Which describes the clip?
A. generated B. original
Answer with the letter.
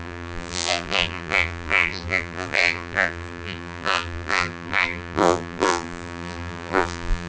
A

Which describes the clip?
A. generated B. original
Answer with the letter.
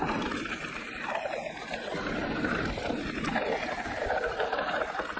B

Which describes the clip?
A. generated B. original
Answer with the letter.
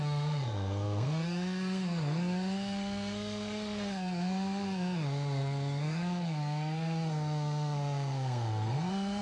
A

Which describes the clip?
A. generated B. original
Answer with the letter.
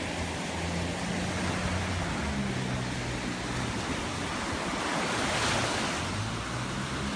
B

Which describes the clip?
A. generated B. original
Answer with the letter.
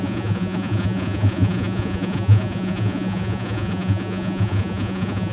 A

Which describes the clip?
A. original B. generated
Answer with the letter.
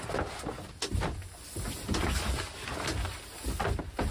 A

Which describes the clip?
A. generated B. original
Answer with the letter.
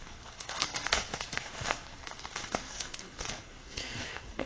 A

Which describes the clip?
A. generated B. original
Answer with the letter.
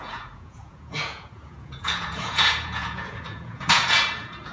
A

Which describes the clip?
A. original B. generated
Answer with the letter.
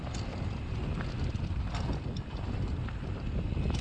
A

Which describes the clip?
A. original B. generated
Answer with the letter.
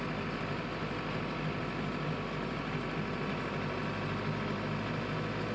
A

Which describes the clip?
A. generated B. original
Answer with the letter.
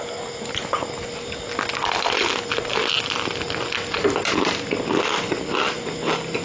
B